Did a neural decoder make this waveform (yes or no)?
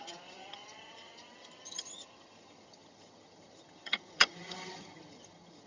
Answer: yes